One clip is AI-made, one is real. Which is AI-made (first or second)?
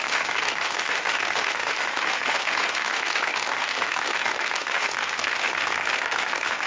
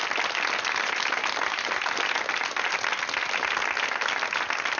first